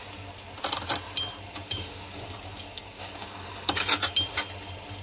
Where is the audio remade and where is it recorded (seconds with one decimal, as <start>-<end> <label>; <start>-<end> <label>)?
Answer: 0.0-1.6 recorded; 1.6-4.1 remade; 4.1-5.0 recorded